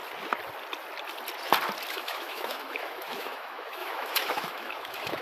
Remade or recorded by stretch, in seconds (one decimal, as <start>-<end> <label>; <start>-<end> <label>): 0.0-1.9 recorded; 1.9-5.2 remade